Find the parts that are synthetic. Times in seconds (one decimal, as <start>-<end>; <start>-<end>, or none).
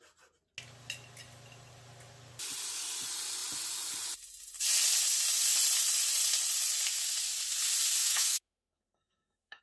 8.0-9.6